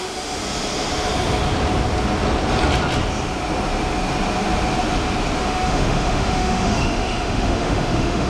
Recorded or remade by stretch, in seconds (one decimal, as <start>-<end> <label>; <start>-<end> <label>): 0.0-0.4 remade; 0.4-5.4 recorded; 5.4-8.3 remade